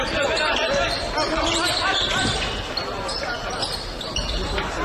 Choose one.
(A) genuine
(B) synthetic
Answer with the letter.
A